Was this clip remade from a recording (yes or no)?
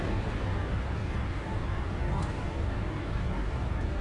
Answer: yes